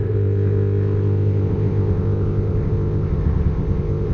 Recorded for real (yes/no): no